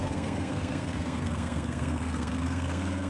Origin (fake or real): fake